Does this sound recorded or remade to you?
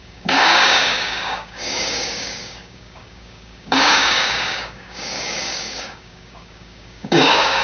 remade